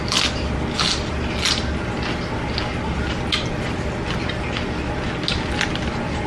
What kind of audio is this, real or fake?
real